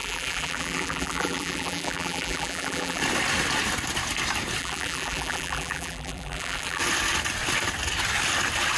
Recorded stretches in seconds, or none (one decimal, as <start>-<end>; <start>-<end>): 3.0-4.6; 6.8-8.8